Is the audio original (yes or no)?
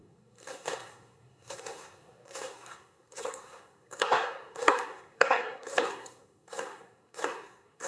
no